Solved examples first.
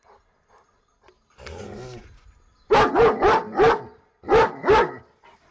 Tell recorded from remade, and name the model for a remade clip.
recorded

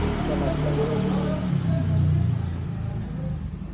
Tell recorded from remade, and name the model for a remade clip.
recorded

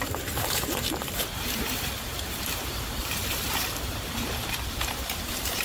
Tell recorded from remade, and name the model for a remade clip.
remade, vocoder, BigVGAN v2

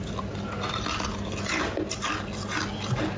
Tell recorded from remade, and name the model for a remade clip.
recorded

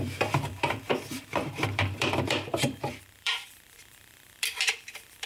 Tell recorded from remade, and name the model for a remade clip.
remade, vocoder, BigVGAN v2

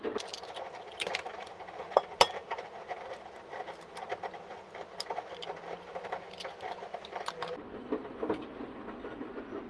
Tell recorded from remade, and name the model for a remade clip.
recorded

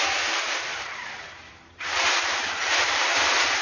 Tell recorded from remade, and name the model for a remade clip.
remade, vocoder, BigVGAN v2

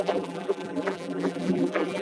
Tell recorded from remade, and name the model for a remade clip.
remade, vocoder, BigVGAN v2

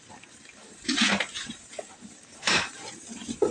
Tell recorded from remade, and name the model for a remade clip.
remade, vocoder, BigVGAN v2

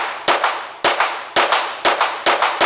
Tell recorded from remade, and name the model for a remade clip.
recorded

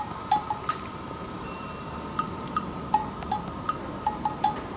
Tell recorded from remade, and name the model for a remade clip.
remade, vocoder, BigVGAN v2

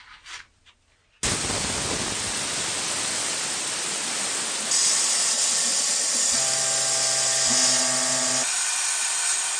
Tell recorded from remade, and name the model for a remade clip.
recorded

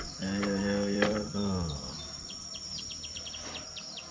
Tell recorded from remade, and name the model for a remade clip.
remade, vocoder, BigVGAN v2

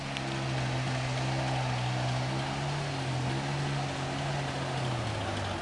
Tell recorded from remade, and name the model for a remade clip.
recorded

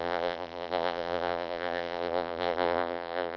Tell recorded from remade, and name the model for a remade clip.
remade, vocoder, BigVGAN v2